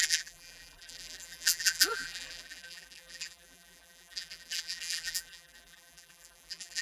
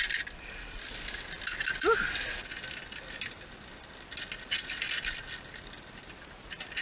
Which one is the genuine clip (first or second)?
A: second